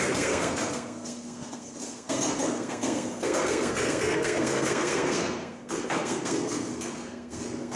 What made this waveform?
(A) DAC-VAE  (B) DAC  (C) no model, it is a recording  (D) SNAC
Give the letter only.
D